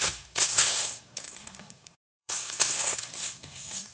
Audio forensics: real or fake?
fake